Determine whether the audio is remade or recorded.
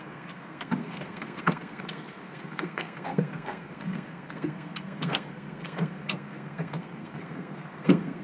remade